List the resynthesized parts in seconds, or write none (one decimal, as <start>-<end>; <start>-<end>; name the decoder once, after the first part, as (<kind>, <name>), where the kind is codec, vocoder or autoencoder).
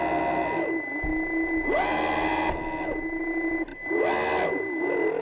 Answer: none